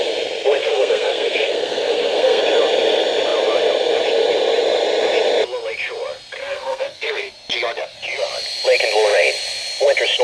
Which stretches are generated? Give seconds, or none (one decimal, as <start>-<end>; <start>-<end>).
0.6-2.4; 6.4-7.3